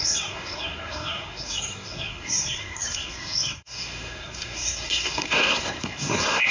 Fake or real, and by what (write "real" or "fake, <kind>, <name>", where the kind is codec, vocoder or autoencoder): fake, codec, SNAC